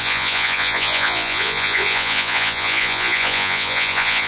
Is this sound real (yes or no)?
no